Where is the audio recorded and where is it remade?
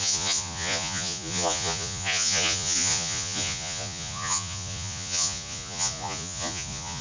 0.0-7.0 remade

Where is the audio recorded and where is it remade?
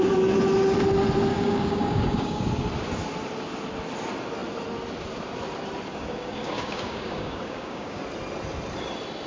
0.0-1.3 recorded; 1.3-2.4 remade; 2.4-5.9 recorded; 5.9-8.0 remade; 8.0-9.3 recorded